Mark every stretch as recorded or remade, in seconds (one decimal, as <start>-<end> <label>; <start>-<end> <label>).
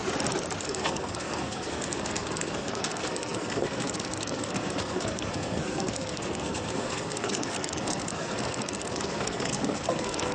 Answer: 0.0-0.6 recorded; 0.6-10.3 remade